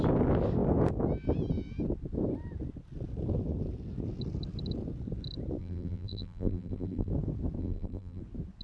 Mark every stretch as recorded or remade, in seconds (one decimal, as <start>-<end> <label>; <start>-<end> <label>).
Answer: 0.0-5.6 recorded; 5.6-7.1 remade; 7.1-7.6 recorded; 7.6-8.2 remade; 8.2-8.6 recorded